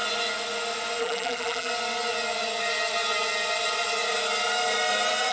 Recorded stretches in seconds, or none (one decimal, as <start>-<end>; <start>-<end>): 0.0-1.0; 1.7-5.3